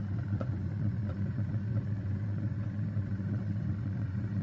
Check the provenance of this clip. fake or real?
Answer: fake